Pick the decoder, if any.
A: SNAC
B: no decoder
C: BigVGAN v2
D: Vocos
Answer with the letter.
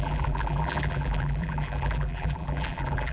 C